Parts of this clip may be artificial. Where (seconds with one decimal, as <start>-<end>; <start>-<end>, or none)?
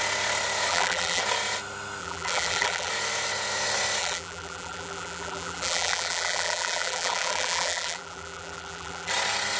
0.7-1.2; 2.0-2.9; 4.0-9.1